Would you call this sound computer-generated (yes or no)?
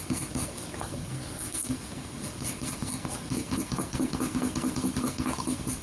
yes